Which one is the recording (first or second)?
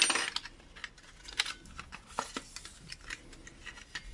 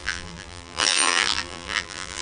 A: first